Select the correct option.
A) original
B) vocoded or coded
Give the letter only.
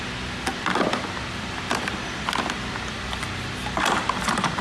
A